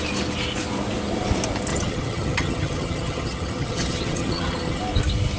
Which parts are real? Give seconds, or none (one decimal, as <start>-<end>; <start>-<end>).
0.0-1.7; 4.8-5.4